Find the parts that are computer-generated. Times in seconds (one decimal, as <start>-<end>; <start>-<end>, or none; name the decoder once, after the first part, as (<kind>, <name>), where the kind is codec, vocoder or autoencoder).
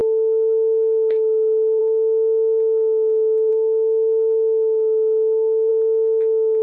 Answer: 0.0-1.8 (autoencoder, DAC-VAE); 3.5-5.7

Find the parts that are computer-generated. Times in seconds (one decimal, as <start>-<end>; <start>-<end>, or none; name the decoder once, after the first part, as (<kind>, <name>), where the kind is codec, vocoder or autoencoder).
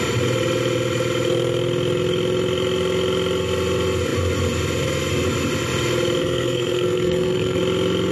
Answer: 6.2-7.6 (codec, SNAC)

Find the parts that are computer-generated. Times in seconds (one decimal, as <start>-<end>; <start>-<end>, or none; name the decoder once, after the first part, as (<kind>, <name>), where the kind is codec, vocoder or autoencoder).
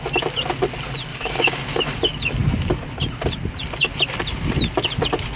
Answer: 1.1-1.8 (codec, DAC)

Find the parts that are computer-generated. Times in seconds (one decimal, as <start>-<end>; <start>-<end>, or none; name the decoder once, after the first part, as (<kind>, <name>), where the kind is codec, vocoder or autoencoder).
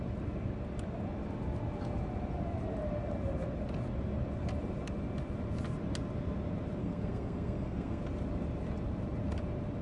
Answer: 6.8-8.0 (codec, SNAC)